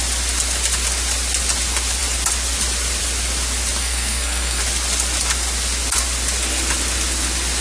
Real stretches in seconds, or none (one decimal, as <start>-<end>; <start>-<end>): 0.0-3.8; 4.6-7.6